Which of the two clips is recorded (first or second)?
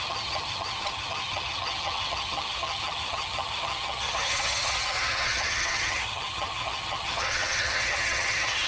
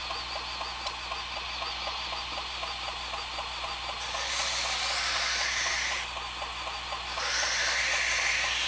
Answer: second